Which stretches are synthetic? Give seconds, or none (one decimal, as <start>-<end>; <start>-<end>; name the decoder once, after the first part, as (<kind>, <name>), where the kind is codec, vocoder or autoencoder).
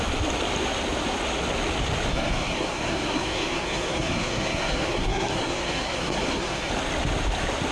2.1-6.7 (codec, SNAC)